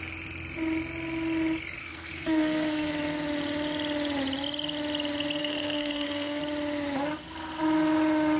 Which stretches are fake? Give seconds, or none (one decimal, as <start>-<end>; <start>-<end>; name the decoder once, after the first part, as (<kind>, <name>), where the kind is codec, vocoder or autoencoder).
1.8-2.9 (codec, SNAC); 5.4-6.4